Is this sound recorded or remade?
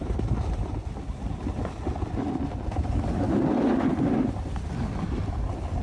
recorded